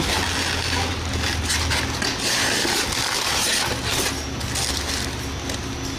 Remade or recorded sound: recorded